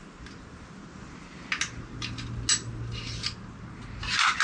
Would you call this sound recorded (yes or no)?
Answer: yes